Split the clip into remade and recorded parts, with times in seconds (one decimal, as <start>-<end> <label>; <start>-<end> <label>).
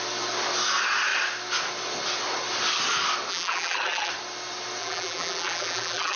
0.0-3.3 recorded; 3.3-4.1 remade; 4.1-4.8 recorded; 4.8-6.2 remade